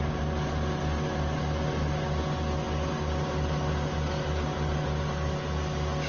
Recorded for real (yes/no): yes